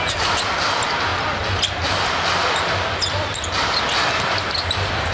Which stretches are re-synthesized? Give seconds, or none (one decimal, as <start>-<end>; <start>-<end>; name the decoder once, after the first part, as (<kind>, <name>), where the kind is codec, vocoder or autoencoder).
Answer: none

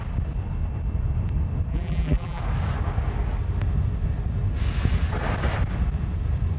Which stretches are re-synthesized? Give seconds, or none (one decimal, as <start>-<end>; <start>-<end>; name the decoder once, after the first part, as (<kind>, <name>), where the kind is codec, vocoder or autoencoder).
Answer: 1.7-2.4 (vocoder, BigVGAN v2)

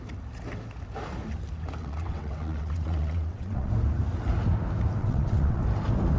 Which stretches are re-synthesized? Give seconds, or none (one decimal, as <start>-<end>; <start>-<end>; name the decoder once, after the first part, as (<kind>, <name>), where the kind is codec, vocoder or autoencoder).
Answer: 1.8-3.7 (vocoder, WaveNeXt); 5.0-5.6